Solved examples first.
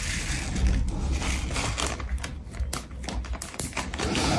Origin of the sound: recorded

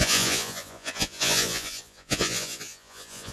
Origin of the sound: remade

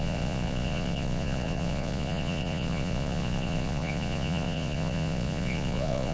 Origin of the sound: remade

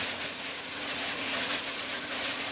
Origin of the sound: remade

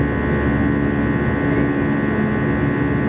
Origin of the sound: recorded